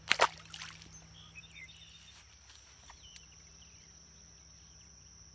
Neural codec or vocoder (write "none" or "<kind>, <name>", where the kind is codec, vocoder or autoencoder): none